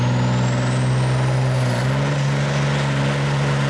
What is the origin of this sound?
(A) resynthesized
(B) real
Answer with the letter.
B